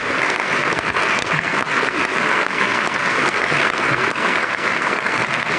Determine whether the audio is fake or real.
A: fake